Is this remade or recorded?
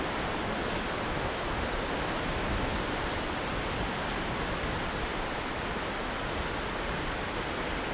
recorded